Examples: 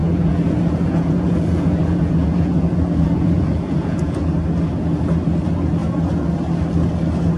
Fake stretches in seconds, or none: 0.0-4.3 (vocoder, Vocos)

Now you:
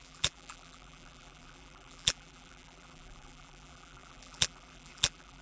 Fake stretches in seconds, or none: 0.0-5.4 (vocoder, BigVGAN v2)

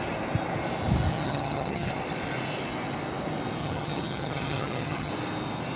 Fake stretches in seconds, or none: 1.1-1.9 (vocoder, HiFi-GAN); 3.6-5.1